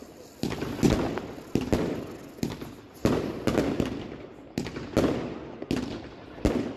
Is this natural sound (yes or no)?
yes